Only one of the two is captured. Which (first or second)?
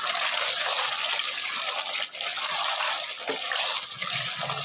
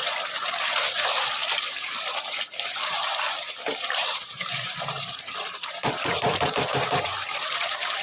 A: first